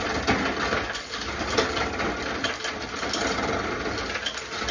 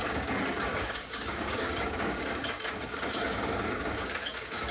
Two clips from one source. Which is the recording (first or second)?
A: first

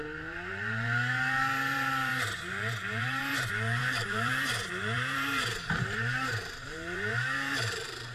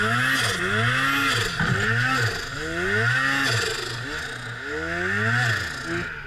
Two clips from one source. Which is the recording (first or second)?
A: second